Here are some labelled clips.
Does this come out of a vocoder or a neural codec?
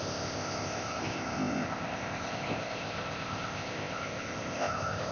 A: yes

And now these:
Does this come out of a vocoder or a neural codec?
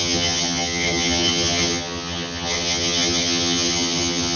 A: yes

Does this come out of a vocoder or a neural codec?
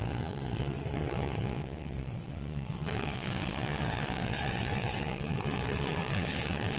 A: yes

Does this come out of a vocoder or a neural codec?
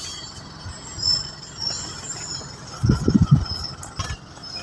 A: no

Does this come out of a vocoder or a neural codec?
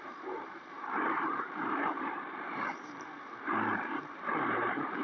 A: yes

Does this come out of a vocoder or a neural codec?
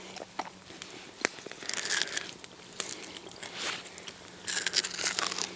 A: no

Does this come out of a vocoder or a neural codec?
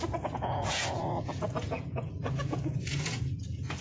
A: yes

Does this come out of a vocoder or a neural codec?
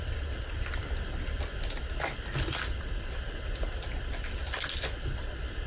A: no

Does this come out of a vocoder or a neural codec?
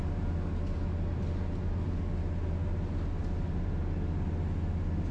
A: no